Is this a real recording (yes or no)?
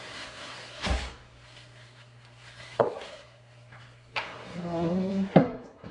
no